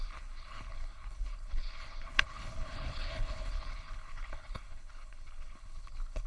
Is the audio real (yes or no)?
no